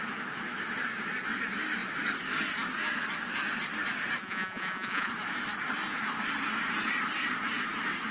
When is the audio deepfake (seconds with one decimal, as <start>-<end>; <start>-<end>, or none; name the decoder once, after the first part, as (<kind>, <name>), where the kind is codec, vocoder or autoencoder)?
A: 4.2-5.1 (vocoder, Vocos)